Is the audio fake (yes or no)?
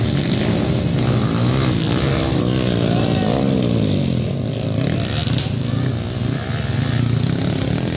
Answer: no